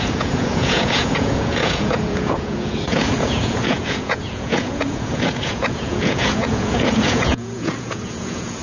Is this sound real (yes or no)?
no